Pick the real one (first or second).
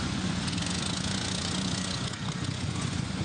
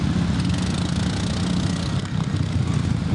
second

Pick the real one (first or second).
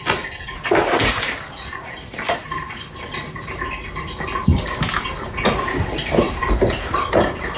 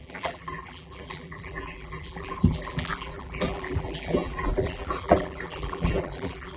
first